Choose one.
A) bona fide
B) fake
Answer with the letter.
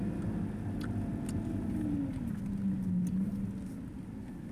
A